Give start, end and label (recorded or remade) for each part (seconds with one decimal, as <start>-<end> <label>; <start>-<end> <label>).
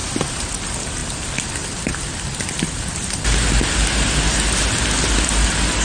0.0-0.5 remade; 0.5-5.8 recorded